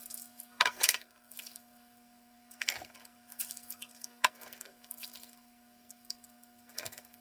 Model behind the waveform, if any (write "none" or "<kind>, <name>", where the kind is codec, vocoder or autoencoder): codec, SNAC